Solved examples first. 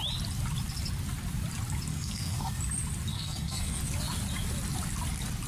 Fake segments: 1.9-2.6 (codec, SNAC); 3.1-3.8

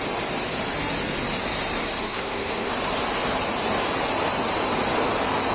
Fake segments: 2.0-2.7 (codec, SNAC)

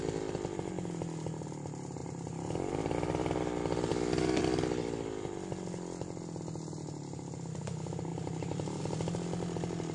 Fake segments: none